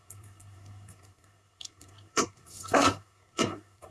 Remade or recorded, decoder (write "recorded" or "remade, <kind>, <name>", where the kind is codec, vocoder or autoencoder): remade, codec, SNAC